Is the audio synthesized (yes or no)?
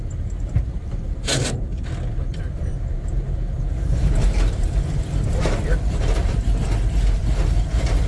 yes